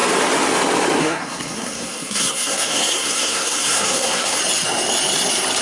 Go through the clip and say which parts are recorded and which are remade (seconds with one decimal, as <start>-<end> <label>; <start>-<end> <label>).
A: 0.0-1.0 recorded; 1.0-4.4 remade; 4.4-5.6 recorded